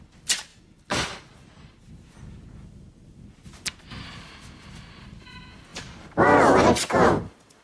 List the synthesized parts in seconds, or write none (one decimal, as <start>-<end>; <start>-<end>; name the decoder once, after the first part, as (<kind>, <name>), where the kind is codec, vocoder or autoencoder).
5.7-7.6 (vocoder, BigVGAN v2)